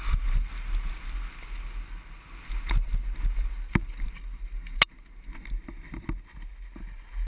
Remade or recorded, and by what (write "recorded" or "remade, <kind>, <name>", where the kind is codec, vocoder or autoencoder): recorded